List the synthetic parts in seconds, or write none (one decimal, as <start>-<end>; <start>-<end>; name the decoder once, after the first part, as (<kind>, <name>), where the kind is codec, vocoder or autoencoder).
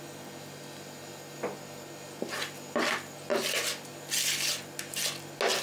none